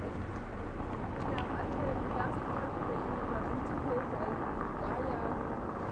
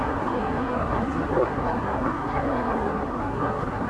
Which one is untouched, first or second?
first